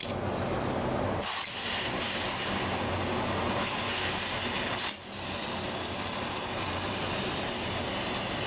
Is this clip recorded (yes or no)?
yes